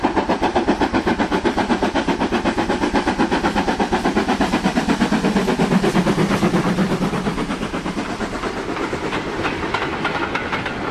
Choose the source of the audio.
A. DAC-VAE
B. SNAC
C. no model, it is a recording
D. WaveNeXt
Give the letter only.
C